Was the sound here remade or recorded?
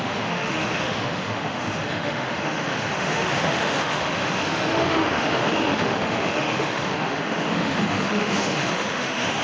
remade